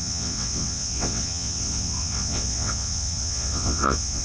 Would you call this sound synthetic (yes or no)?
yes